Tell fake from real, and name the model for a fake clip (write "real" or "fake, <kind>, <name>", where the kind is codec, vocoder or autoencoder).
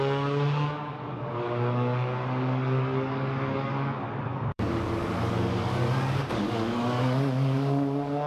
fake, codec, DAC